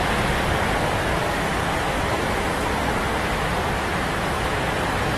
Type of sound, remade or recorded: recorded